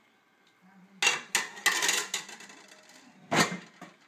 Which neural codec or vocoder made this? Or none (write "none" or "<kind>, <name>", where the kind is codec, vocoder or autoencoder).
none